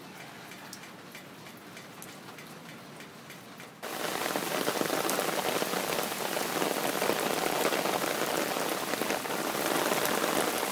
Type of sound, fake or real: real